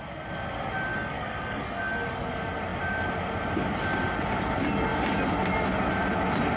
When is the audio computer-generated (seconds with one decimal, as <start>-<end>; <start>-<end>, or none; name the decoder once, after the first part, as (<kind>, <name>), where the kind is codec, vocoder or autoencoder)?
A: 0.9-2.3 (codec, DAC)